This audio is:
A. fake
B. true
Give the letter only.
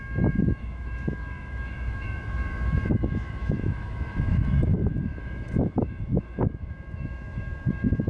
A